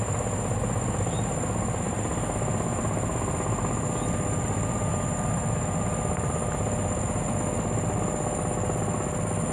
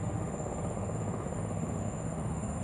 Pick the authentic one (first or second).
first